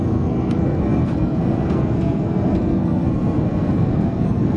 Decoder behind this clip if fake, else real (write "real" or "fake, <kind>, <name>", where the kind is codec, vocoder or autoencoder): fake, codec, SNAC